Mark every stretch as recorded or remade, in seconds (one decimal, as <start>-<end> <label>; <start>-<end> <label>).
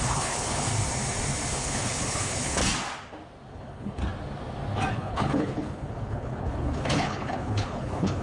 0.0-0.7 remade; 0.7-1.5 recorded; 1.5-2.6 remade; 2.6-3.5 recorded; 3.5-4.0 remade; 4.0-4.9 recorded; 4.9-8.2 remade